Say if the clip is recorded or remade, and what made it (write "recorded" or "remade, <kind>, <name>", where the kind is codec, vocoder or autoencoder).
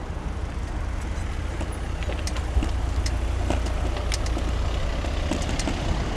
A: recorded